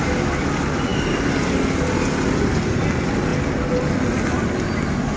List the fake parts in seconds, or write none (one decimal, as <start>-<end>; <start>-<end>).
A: none